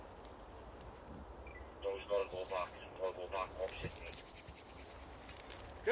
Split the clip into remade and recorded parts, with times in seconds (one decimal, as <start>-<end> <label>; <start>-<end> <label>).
0.0-5.9 recorded